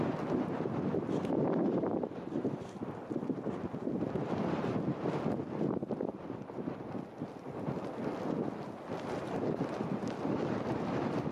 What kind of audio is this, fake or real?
real